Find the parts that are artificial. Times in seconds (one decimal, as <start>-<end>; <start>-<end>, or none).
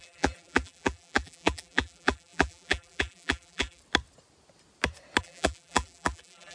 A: 0.0-3.8; 5.2-6.5